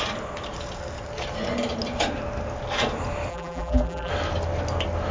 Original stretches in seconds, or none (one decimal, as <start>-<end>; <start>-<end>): 0.0-3.3; 4.1-5.1